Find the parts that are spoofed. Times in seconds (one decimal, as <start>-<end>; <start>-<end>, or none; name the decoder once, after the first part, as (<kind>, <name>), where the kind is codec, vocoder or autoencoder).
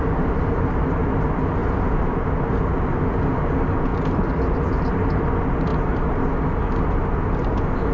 none